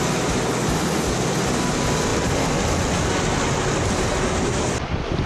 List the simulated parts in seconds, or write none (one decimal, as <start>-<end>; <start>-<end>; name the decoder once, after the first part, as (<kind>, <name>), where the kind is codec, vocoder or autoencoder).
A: none

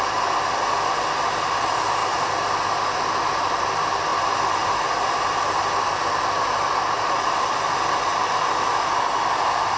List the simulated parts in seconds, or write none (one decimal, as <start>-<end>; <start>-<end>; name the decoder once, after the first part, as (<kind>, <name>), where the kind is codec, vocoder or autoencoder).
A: none

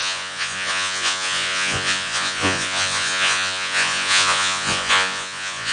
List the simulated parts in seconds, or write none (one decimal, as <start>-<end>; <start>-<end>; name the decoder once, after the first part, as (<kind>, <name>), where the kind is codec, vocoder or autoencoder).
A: 0.0-5.7 (vocoder, Vocos)

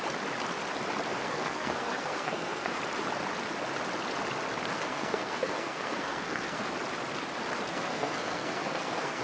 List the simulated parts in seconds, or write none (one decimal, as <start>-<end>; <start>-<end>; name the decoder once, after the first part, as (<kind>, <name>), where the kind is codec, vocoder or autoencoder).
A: 1.1-2.8 (codec, SNAC); 4.7-6.6; 7.7-9.2

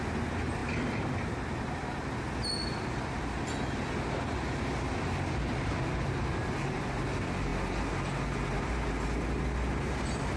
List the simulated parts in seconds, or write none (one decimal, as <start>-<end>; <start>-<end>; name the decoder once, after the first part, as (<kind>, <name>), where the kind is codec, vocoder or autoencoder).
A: none

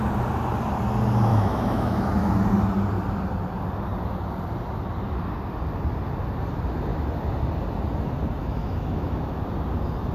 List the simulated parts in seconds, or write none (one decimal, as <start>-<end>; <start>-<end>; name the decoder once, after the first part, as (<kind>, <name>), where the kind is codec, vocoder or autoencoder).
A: 1.3-2.3 (autoencoder, DAC-VAE); 8.4-9.4

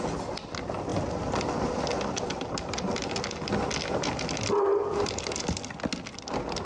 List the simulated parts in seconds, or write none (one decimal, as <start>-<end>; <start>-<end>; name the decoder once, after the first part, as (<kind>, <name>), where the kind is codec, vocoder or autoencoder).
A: none